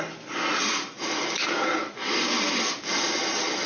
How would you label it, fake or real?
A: real